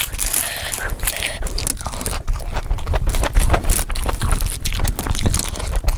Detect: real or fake real